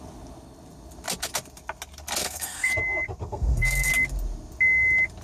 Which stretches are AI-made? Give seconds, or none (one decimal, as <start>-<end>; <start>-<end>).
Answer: 2.2-2.7; 3.2-3.9